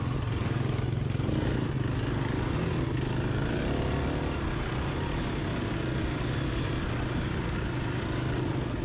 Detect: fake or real real